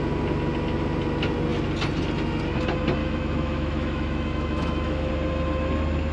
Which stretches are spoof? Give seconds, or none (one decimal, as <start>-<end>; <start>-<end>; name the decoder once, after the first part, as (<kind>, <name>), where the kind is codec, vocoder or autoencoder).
3.0-5.1 (autoencoder, DAC-VAE)